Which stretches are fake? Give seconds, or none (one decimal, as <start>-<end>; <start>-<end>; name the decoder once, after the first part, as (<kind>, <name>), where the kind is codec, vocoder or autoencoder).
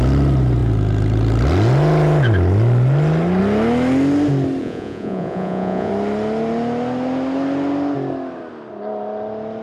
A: 4.6-5.9 (vocoder, Vocos)